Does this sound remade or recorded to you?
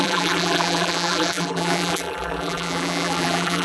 remade